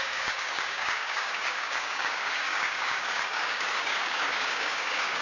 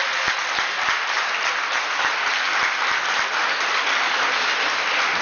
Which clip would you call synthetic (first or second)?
first